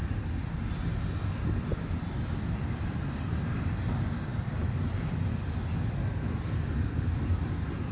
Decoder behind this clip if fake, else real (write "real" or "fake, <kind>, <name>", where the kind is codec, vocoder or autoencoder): real